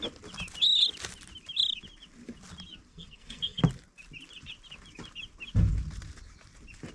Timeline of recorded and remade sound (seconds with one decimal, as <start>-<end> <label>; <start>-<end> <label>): 0.0-2.9 recorded; 2.9-3.6 remade; 3.6-6.9 recorded